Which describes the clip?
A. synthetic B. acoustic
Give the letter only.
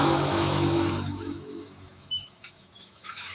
A